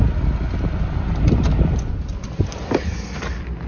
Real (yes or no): yes